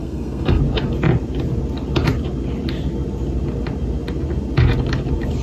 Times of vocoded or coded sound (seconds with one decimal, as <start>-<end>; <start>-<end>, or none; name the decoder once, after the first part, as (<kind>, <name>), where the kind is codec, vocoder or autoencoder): 0.0-0.6 (codec, SNAC)